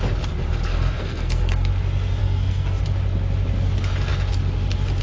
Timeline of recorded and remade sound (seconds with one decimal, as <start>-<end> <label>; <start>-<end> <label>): 0.0-0.7 recorded; 0.7-1.7 remade; 1.7-2.2 recorded; 2.2-2.8 remade; 2.8-5.0 recorded